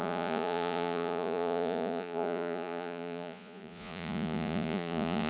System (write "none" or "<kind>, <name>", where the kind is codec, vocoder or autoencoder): vocoder, Vocos